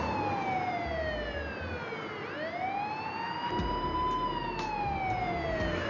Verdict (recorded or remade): recorded